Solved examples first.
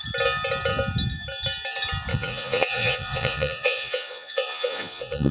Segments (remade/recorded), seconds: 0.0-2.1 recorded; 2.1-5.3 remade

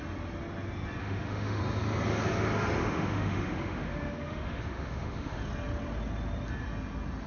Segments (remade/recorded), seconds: 0.0-1.0 recorded; 1.0-1.6 remade; 1.6-2.8 recorded; 2.8-5.4 remade; 5.4-7.3 recorded

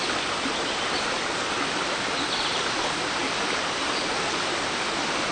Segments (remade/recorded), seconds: 0.0-5.3 recorded

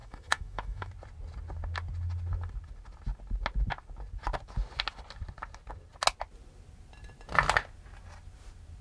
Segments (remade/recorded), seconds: 0.0-0.9 remade; 0.9-8.8 recorded

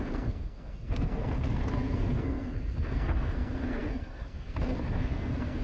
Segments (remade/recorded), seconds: 0.0-5.6 remade

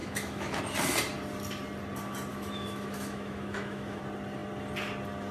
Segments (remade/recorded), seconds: 0.0-0.6 remade; 0.6-2.3 recorded; 2.3-4.0 remade; 4.0-5.3 recorded

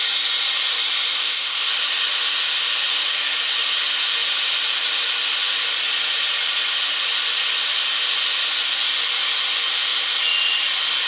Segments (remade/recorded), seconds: 0.0-1.2 recorded; 1.2-1.7 remade; 1.7-11.1 recorded